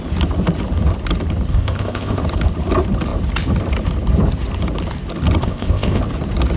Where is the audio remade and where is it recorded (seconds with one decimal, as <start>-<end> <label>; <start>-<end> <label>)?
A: 0.0-1.5 recorded; 1.5-2.2 remade; 2.2-5.4 recorded; 5.4-6.0 remade; 6.0-6.6 recorded